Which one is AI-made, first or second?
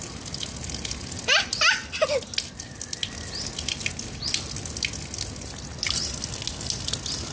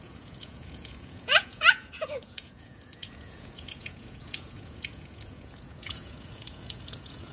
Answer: second